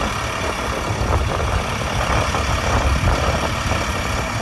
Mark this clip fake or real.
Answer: real